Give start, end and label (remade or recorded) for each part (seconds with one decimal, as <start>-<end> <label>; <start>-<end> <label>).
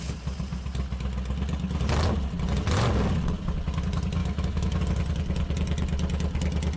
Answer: 0.0-4.2 recorded; 4.2-4.8 remade; 4.8-6.8 recorded